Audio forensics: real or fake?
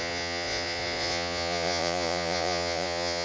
fake